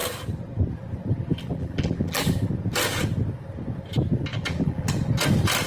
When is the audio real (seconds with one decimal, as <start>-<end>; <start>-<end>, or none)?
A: 0.0-1.3; 2.5-4.3; 4.9-5.7